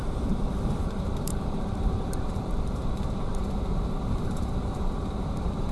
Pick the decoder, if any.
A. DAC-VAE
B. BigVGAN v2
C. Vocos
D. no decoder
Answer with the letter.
B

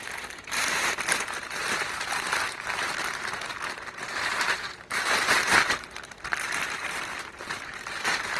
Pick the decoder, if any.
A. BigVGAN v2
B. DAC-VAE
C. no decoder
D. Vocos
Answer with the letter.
A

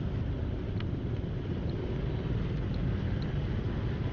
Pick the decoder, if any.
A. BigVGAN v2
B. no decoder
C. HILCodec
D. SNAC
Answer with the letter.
B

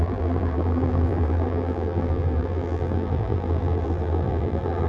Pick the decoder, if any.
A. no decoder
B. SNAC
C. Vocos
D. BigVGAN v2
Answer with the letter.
D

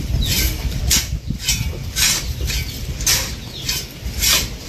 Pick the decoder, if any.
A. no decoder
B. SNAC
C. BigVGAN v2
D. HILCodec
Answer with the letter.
A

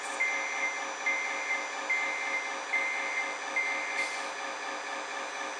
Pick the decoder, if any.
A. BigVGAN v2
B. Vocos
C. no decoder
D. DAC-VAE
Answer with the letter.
C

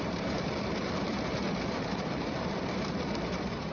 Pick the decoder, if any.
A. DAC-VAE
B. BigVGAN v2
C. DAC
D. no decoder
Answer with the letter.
B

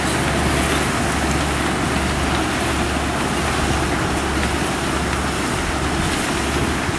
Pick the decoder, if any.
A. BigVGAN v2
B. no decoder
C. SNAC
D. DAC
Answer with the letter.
B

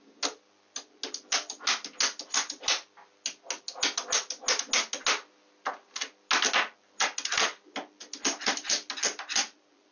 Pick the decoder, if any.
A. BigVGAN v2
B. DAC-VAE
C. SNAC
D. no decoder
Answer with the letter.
D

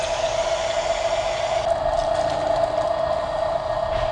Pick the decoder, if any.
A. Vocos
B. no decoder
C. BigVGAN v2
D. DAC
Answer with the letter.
B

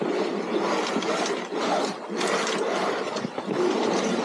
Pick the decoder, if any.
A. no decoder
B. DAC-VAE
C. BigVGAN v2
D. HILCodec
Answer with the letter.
A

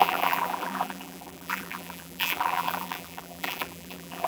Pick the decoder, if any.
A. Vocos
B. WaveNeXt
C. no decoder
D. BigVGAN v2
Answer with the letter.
D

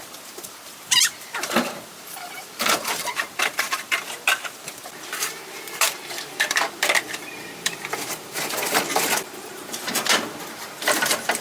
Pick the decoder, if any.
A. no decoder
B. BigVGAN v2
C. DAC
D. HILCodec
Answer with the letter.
B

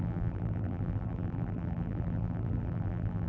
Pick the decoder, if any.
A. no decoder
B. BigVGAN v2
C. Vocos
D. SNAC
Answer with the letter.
B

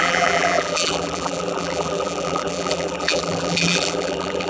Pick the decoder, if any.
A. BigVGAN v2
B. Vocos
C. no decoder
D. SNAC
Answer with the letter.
A